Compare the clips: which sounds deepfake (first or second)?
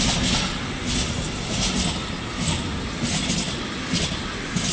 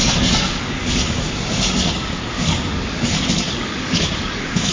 second